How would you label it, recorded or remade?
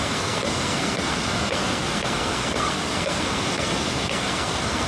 remade